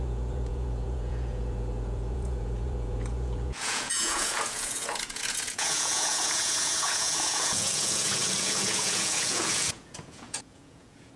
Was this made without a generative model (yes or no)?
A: no